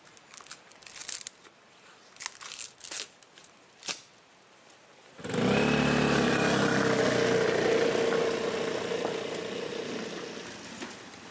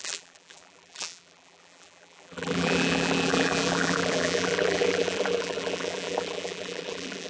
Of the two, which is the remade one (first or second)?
second